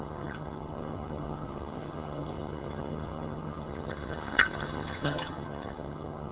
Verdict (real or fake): fake